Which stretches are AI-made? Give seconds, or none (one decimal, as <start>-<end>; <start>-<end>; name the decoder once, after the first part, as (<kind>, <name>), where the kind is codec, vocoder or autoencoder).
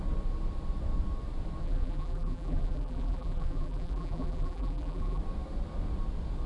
1.6-5.2 (vocoder, BigVGAN v2)